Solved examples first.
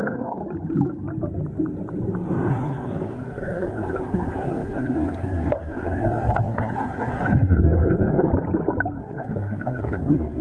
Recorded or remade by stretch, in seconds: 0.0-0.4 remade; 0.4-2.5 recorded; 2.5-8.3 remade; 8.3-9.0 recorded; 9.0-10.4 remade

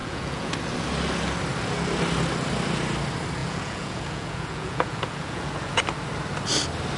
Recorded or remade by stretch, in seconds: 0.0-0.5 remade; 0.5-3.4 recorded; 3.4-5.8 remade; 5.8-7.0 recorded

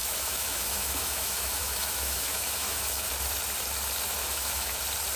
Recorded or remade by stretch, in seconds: 0.0-3.1 remade; 3.1-4.2 recorded; 4.2-4.8 remade; 4.8-5.2 recorded